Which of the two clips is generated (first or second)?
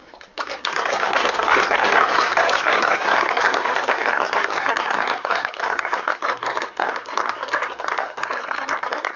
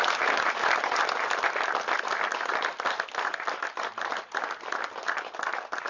first